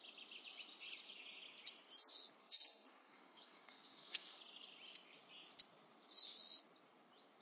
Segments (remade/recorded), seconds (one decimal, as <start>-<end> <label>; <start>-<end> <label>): 0.0-2.4 recorded; 2.4-4.4 remade; 4.4-7.4 recorded